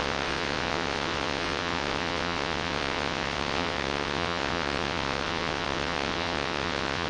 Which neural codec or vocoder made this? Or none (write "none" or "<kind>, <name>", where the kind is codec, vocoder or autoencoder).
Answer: vocoder, WaveNeXt